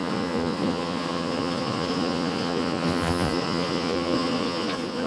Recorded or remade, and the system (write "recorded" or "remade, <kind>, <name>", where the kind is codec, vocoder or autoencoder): remade, vocoder, Vocos